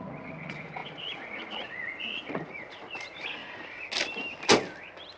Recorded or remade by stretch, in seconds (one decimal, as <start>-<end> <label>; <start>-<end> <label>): 0.0-3.4 remade; 3.4-5.2 recorded